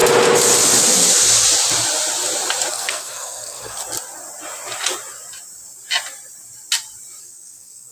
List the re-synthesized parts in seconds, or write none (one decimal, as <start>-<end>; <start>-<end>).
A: 2.7-3.8; 7.2-7.9

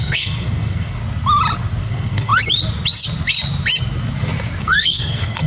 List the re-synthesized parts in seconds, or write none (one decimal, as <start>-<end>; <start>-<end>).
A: 0.0-1.0; 1.8-2.3; 4.6-5.5

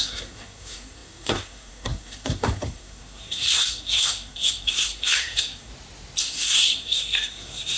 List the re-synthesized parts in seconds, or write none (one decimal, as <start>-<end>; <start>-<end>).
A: 0.0-5.7; 6.2-7.8

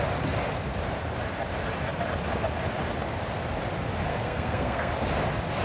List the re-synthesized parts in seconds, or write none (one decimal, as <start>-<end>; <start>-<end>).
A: 4.1-4.9

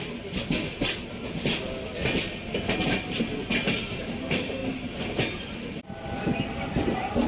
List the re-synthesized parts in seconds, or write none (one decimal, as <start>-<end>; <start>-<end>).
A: none

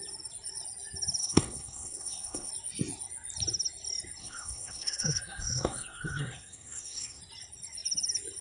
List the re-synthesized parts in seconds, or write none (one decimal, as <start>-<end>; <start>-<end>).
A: 1.2-2.5; 4.2-7.2

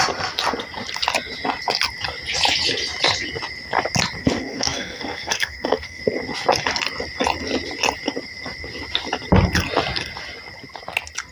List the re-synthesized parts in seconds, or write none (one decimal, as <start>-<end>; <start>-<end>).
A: 4.2-6.0

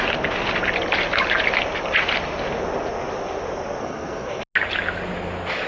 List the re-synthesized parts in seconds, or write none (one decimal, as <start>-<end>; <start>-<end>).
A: 3.8-4.4